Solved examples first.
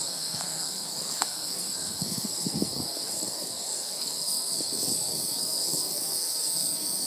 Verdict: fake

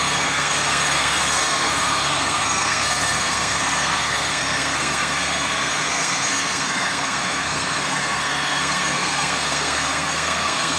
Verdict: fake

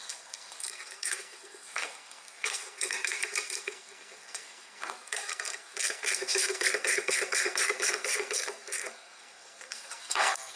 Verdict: fake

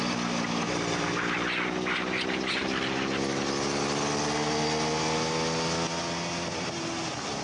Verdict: real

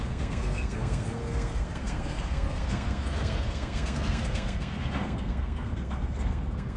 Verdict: fake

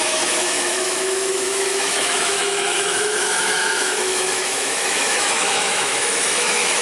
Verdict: fake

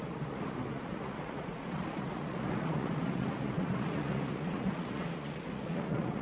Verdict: fake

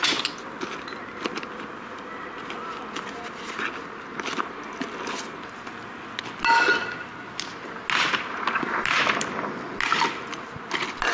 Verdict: real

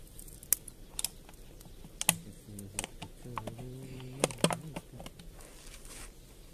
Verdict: real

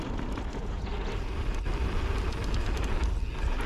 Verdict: real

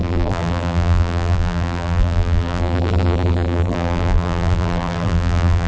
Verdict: fake